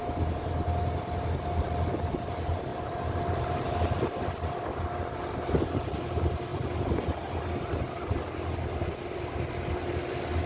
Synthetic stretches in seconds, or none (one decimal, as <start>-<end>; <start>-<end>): 2.7-3.7